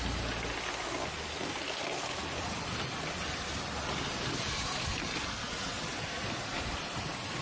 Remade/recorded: recorded